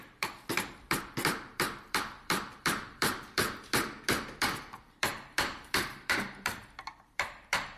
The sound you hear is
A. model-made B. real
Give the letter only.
A